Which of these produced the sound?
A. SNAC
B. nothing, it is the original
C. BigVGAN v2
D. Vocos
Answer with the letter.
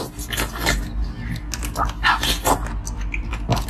B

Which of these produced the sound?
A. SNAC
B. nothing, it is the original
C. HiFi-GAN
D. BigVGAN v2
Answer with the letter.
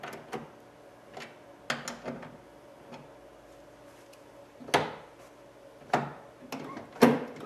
B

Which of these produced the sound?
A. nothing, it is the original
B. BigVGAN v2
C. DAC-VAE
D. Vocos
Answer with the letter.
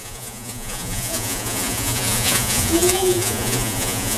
D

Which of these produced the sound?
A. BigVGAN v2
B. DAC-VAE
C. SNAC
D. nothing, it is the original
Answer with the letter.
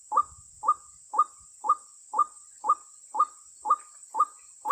A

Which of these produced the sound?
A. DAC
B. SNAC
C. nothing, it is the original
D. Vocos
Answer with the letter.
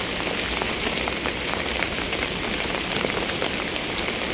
C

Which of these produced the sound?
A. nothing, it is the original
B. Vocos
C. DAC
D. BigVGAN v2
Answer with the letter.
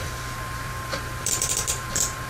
D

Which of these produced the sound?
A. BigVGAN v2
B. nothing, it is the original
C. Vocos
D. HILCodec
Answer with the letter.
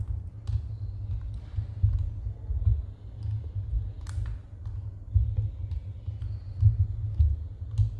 B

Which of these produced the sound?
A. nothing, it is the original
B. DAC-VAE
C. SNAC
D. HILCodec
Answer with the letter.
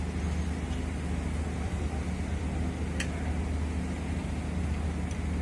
A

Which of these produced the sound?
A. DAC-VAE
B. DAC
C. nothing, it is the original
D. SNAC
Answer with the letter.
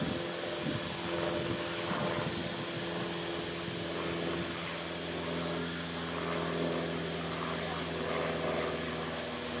C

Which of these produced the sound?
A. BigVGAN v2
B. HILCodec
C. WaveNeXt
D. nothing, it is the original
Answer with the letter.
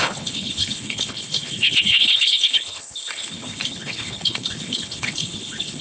B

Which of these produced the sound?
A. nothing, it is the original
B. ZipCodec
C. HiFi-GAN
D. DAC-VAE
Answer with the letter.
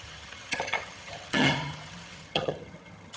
C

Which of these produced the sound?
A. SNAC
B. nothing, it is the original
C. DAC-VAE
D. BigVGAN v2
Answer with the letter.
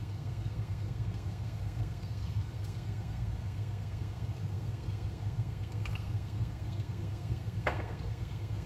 A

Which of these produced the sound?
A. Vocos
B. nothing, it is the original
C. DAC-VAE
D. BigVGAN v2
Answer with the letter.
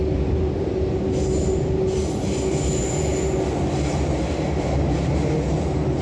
B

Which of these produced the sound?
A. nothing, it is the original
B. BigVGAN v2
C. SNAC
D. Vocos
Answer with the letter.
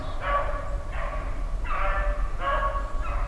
A